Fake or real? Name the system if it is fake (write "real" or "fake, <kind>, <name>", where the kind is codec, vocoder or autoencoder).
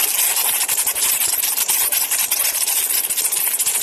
fake, vocoder, BigVGAN v2